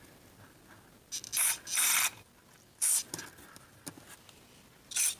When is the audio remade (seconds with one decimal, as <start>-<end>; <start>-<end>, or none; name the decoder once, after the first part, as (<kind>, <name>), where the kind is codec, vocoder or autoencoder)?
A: none